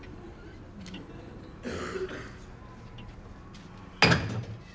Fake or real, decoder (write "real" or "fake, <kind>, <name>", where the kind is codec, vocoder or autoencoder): real